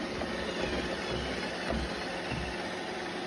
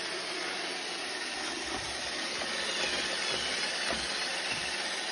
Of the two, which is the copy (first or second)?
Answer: second